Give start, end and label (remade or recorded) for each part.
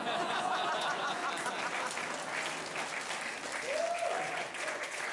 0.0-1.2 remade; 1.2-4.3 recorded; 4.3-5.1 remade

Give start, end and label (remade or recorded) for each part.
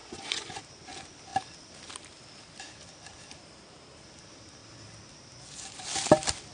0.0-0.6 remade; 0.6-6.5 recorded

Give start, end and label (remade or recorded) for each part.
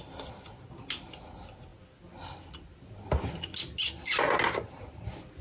0.0-5.4 recorded